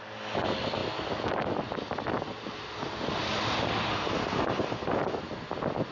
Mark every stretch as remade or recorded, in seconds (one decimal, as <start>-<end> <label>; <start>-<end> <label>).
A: 0.0-5.9 recorded